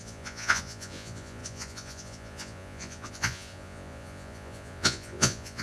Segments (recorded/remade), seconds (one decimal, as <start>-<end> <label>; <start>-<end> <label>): 0.0-5.6 remade